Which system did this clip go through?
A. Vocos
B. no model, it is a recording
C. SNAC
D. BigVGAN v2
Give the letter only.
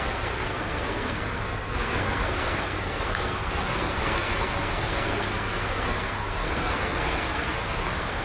C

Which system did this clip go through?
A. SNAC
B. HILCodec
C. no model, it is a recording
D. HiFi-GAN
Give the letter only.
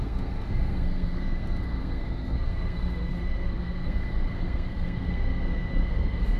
A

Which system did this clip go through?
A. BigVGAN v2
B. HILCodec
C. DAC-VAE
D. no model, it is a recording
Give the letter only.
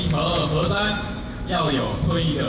C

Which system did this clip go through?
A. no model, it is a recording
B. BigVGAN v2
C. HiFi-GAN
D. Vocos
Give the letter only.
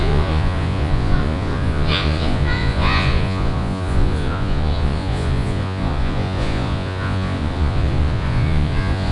D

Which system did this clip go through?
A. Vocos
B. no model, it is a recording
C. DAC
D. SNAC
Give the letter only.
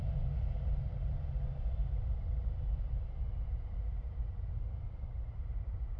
B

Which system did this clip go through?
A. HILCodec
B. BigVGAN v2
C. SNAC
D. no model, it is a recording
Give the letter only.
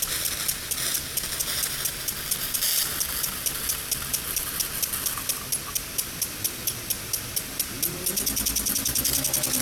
D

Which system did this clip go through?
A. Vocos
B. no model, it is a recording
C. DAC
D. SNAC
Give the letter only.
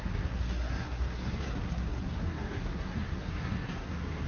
D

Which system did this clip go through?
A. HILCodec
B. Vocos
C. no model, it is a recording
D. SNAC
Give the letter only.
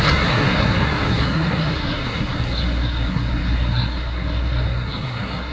D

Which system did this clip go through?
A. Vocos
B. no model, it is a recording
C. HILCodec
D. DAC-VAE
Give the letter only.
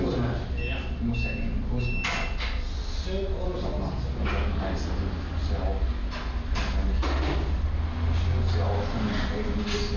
B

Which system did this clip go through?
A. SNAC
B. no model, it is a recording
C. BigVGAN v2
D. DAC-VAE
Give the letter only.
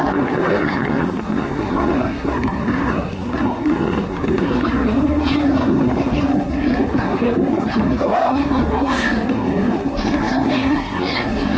A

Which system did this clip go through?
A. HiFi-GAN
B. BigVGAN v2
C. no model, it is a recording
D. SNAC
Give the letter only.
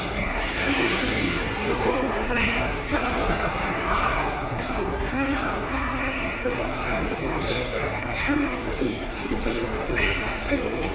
D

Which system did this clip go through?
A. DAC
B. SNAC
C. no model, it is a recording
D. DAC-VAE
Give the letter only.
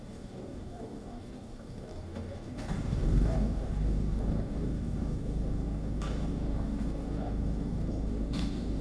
A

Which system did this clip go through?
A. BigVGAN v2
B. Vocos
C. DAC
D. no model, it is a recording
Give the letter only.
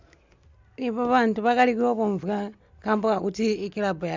D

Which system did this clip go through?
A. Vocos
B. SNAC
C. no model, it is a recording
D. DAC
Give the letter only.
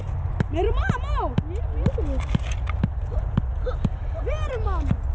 C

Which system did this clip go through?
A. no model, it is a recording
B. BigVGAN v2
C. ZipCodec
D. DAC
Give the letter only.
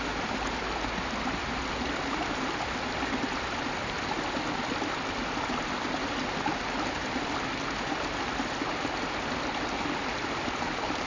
A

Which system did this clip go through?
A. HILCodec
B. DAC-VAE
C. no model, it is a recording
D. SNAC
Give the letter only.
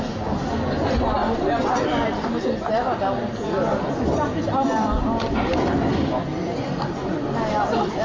C